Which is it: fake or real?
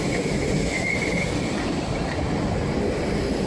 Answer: real